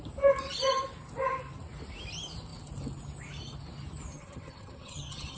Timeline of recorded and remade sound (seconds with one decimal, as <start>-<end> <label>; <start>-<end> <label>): 0.0-4.1 recorded; 4.1-5.4 remade